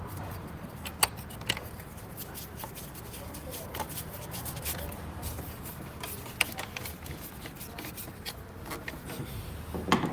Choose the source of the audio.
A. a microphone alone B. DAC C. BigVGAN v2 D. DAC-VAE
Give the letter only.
A